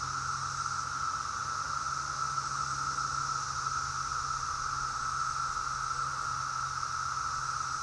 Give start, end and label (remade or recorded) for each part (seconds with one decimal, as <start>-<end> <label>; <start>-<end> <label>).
0.0-7.8 recorded